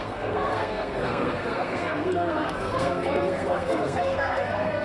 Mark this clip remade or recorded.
remade